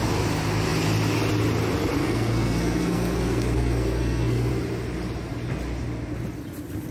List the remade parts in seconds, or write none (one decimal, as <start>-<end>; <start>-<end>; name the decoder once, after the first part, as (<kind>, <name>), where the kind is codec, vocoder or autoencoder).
2.0-4.5 (codec, SNAC)